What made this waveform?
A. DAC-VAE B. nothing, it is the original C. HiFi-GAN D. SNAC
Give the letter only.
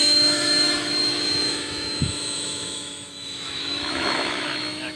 A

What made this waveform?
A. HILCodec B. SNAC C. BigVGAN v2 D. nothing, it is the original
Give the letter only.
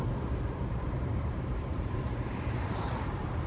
C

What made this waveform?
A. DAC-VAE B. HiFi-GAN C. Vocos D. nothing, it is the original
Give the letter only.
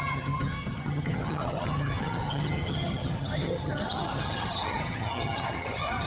B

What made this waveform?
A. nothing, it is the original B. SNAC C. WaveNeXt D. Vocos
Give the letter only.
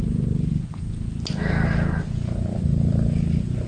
A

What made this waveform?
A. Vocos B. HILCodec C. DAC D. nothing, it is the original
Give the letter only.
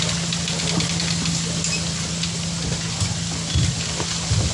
D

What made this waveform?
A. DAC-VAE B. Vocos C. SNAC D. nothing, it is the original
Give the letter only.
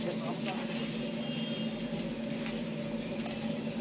D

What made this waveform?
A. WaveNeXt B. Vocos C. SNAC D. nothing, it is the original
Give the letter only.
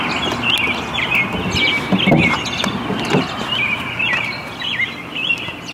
D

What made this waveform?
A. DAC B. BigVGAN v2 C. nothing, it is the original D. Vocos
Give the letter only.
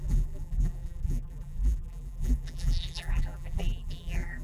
B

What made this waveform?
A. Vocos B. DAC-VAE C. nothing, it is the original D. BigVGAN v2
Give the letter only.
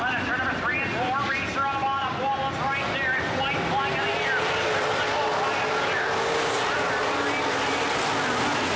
C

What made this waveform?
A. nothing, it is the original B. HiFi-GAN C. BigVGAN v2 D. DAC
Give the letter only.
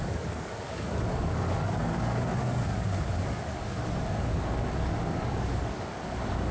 D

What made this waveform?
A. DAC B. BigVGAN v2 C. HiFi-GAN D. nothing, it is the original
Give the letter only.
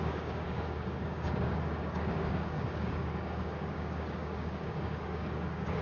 A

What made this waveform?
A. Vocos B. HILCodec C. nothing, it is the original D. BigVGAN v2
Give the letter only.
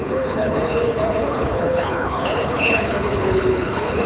B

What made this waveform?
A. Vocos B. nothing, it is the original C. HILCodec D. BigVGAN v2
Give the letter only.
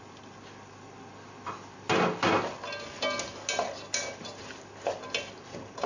B